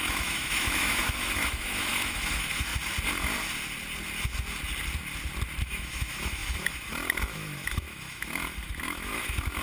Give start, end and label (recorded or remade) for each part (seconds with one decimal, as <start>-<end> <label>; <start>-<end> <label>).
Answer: 0.0-2.7 remade; 2.7-5.6 recorded; 5.6-9.6 remade